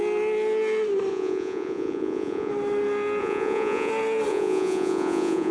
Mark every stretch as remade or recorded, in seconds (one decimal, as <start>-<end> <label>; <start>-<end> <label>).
0.0-1.1 recorded; 1.1-2.5 remade; 2.5-3.2 recorded; 3.2-3.9 remade; 3.9-4.3 recorded; 4.3-5.5 remade